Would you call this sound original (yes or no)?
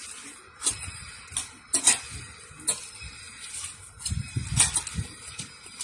yes